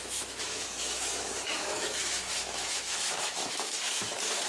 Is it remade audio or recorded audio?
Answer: remade